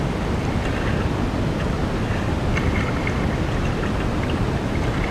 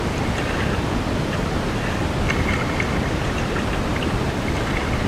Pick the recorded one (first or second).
first